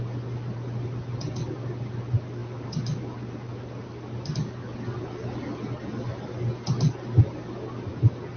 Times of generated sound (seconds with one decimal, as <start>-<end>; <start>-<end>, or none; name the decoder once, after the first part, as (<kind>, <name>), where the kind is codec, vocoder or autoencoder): none